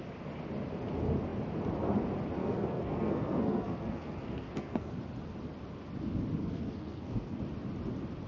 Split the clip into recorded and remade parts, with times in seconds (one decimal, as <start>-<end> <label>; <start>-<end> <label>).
0.0-2.4 recorded; 2.4-4.9 remade; 4.9-6.4 recorded; 6.4-7.4 remade; 7.4-8.3 recorded